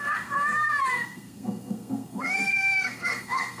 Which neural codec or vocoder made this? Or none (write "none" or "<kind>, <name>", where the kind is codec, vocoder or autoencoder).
codec, SNAC